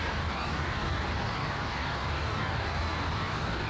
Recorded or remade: remade